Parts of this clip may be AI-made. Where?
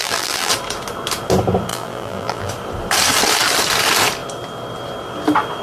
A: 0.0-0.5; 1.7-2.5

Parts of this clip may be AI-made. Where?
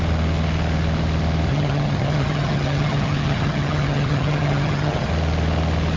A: 1.5-5.1